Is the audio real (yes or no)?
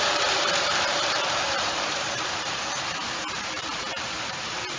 no